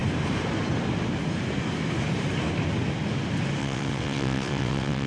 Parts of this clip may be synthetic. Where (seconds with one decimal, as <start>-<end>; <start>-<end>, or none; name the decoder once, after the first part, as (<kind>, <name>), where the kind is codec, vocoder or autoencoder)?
3.6-5.1 (vocoder, WaveNeXt)